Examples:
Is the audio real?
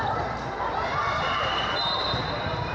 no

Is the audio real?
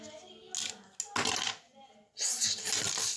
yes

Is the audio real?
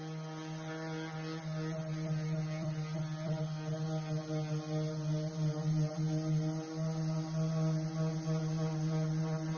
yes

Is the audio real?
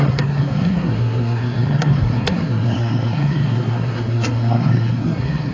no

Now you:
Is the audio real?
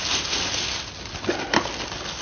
yes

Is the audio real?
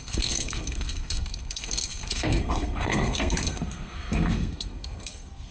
no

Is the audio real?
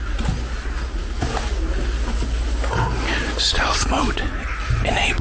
yes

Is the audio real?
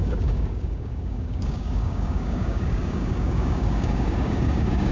no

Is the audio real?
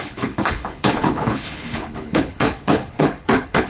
no